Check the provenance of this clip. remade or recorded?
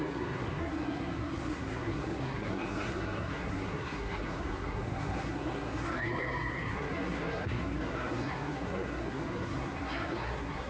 remade